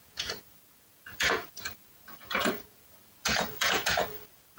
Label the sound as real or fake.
fake